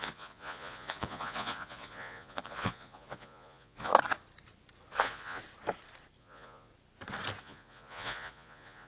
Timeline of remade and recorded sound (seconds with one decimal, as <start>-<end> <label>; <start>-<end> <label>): 0.0-3.9 remade; 3.9-5.0 recorded; 5.0-5.4 remade; 5.4-6.2 recorded; 6.2-6.7 remade; 6.7-7.4 recorded; 7.4-8.9 remade